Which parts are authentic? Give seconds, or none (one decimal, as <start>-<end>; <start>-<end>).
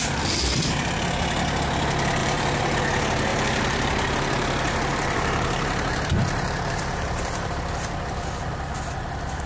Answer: 0.0-2.2; 2.8-3.3; 7.6-9.5